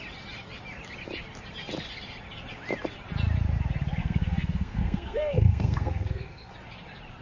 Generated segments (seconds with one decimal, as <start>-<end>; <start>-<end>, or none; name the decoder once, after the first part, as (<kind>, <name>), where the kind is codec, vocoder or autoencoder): 4.0-6.5 (codec, SNAC)